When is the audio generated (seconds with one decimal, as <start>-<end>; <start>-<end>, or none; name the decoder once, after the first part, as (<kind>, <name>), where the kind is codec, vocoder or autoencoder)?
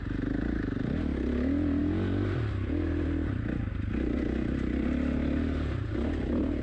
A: none